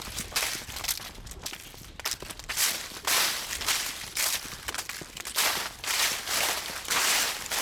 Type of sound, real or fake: real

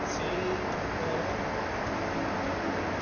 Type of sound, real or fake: real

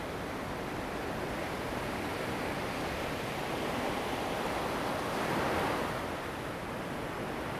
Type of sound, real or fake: real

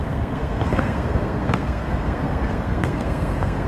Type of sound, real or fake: fake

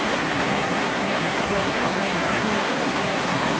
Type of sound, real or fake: fake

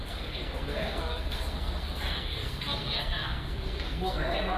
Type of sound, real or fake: fake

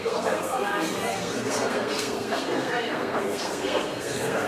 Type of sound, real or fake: fake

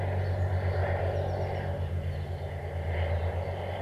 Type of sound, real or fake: real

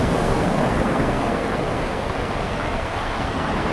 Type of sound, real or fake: fake